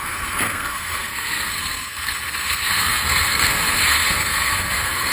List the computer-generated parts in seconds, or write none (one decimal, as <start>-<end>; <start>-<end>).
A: 0.0-5.1